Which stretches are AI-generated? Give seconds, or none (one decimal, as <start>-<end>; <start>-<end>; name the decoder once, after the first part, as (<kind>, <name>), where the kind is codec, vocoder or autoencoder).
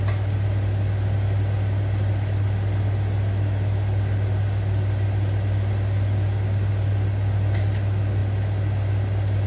none